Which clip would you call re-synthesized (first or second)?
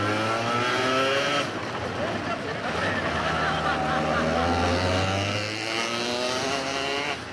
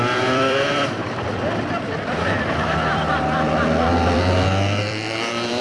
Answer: second